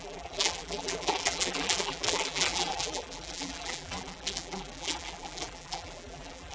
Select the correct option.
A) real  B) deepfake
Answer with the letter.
B